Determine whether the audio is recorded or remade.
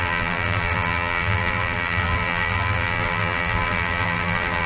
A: remade